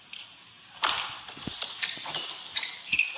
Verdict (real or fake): real